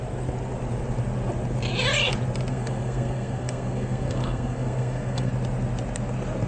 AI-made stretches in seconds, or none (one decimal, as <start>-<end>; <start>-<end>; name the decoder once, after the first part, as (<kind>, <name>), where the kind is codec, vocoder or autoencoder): 2.5-5.3 (codec, SNAC)